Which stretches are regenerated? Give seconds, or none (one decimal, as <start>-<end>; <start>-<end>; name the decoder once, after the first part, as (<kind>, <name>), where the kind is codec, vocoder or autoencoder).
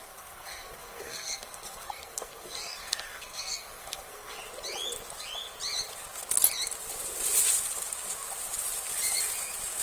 0.0-4.4 (codec, SNAC)